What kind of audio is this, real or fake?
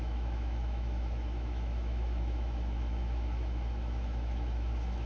fake